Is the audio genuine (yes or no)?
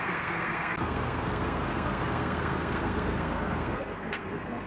no